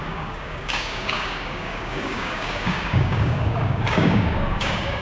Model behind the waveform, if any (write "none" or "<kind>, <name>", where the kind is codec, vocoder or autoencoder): codec, DAC